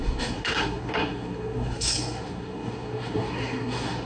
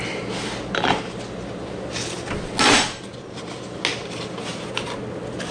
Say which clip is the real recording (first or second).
second